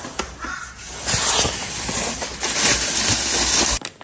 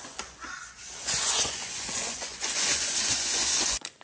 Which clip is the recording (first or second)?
first